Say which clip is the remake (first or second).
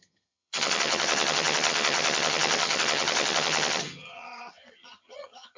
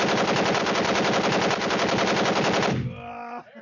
first